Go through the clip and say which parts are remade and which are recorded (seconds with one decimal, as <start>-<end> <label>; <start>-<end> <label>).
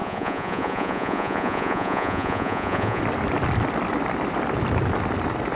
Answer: 0.0-3.0 remade; 3.0-5.6 recorded